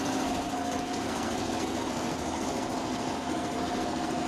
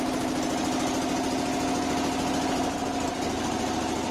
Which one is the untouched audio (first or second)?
second